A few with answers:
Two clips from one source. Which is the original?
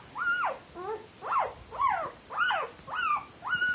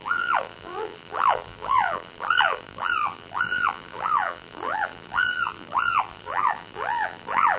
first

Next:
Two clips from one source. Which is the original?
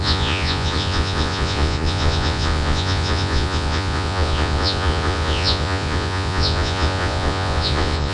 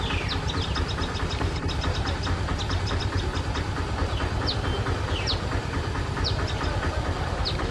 second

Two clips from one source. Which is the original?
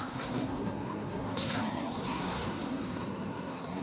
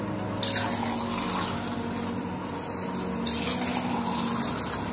second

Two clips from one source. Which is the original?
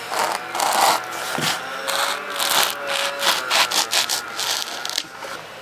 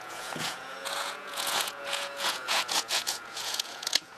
first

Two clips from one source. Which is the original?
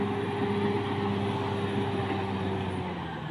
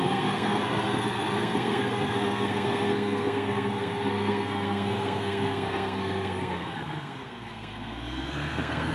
first